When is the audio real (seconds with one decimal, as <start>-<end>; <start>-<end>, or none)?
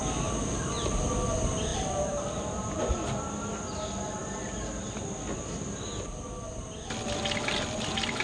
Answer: 0.7-1.7; 2.9-8.2